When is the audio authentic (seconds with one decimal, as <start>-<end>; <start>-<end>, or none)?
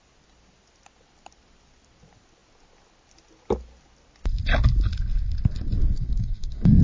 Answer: 0.0-5.8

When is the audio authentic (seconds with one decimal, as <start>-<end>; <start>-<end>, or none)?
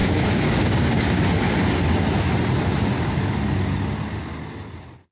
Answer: 1.2-5.1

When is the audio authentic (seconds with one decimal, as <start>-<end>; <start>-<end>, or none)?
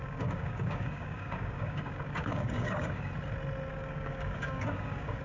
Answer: 3.1-3.7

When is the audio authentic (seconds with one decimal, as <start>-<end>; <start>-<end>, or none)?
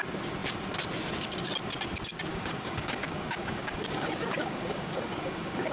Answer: 0.0-2.3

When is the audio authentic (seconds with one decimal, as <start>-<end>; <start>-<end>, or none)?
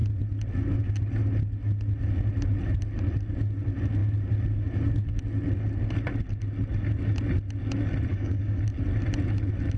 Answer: 0.0-8.1; 8.6-9.8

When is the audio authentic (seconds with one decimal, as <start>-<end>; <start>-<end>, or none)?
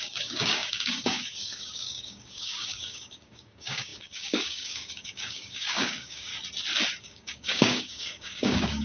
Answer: 6.3-7.0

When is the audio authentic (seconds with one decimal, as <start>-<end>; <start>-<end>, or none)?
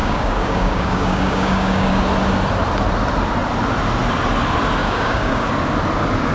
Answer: 2.0-4.8; 5.5-6.3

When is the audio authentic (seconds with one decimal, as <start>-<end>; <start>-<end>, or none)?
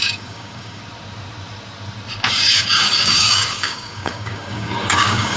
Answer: 0.8-2.3